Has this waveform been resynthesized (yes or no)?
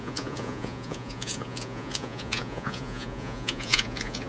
yes